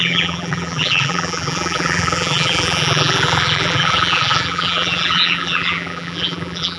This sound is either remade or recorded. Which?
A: remade